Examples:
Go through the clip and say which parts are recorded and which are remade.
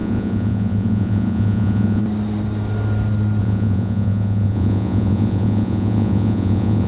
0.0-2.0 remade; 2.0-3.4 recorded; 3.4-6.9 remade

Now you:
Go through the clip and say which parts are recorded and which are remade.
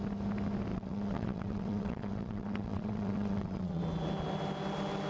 0.0-0.7 recorded; 0.7-3.8 remade; 3.8-5.1 recorded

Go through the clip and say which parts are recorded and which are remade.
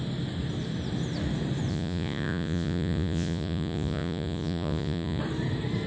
0.0-1.7 recorded; 1.7-5.2 remade; 5.2-5.9 recorded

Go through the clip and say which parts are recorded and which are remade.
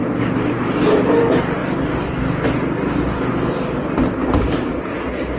0.0-5.4 recorded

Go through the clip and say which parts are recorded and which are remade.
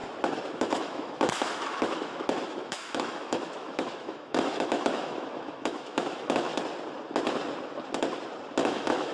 0.0-0.5 recorded; 0.5-6.5 remade; 6.5-8.6 recorded; 8.6-9.1 remade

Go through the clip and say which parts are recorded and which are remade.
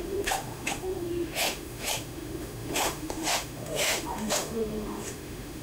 0.0-5.6 remade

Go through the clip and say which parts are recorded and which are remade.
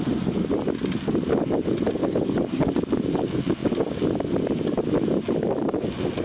0.0-2.0 recorded; 2.0-2.7 remade; 2.7-6.2 recorded